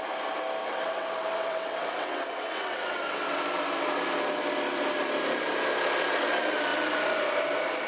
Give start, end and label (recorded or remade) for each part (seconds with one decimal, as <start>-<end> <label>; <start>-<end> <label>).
0.0-0.6 recorded; 0.6-3.4 remade; 3.4-7.9 recorded